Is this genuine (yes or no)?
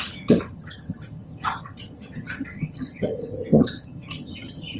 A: no